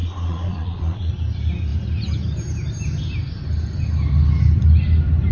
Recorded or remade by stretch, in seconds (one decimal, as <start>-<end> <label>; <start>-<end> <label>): 0.0-1.1 remade; 1.1-5.3 recorded